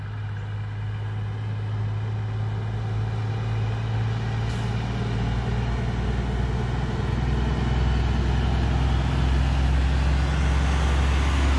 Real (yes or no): yes